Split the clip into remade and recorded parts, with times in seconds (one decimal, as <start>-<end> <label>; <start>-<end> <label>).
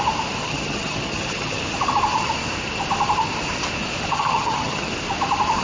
0.0-0.4 recorded; 0.4-1.6 remade; 1.6-4.1 recorded; 4.1-4.9 remade; 4.9-5.6 recorded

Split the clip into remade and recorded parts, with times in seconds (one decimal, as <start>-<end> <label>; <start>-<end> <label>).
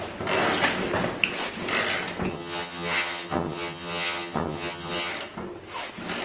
0.0-2.3 recorded; 2.3-5.1 remade; 5.1-6.2 recorded